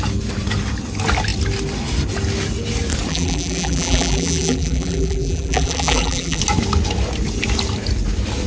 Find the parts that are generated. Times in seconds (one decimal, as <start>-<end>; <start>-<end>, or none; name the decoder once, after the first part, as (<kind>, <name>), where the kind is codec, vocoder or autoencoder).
3.1-6.4 (vocoder, BigVGAN v2)